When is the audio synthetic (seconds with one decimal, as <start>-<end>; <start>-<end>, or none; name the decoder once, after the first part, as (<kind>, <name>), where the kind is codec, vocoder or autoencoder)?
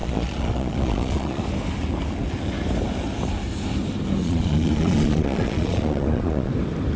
0.0-1.4 (vocoder, Vocos); 4.2-6.5